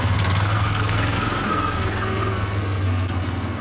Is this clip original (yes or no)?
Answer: no